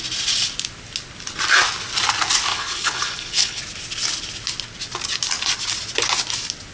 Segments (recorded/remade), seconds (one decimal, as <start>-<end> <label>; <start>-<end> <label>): 0.0-2.5 recorded; 2.5-3.6 remade; 3.6-6.7 recorded

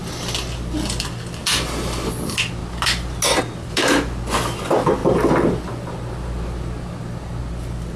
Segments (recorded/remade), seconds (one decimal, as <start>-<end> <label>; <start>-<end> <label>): 0.0-8.0 recorded

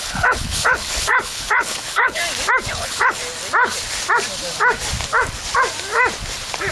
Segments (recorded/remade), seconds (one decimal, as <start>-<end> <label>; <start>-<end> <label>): 0.0-2.2 remade; 2.2-2.7 recorded; 2.7-3.2 remade; 3.2-6.7 recorded

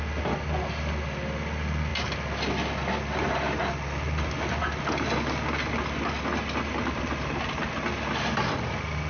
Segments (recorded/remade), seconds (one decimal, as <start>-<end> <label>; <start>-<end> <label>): 0.0-9.1 recorded

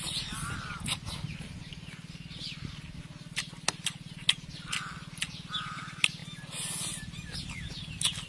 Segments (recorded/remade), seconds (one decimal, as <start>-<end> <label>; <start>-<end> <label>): 0.0-8.3 recorded

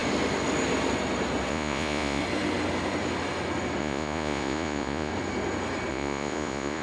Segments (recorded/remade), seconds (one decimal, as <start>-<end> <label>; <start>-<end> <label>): 0.0-1.5 recorded; 1.5-2.2 remade; 2.2-3.8 recorded; 3.8-5.1 remade; 5.1-5.9 recorded; 5.9-6.8 remade

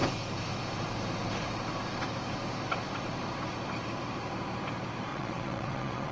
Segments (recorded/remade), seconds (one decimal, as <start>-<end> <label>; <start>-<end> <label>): 0.0-5.1 recorded; 5.1-6.1 remade